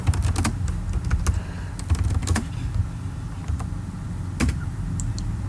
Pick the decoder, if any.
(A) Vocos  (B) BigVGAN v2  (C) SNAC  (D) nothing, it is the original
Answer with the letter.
D